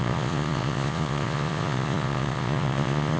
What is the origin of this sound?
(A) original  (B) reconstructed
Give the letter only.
B